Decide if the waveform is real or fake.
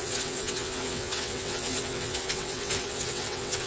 fake